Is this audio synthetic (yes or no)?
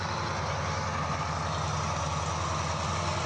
no